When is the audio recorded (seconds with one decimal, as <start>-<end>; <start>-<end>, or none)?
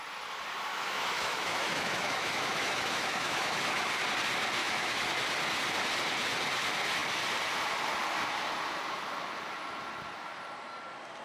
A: 0.0-0.7; 3.9-4.6; 5.1-11.2